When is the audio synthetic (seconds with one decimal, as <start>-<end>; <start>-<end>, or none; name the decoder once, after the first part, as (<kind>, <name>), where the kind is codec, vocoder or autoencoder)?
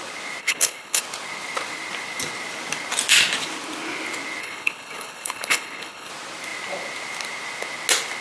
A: 0.4-1.0 (codec, HILCodec); 4.4-6.1